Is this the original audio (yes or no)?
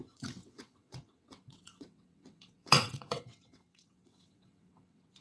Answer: no